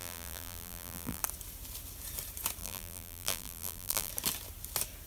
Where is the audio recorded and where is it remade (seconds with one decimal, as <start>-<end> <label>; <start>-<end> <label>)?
0.0-1.2 remade; 1.2-2.6 recorded; 2.6-4.1 remade; 4.1-5.1 recorded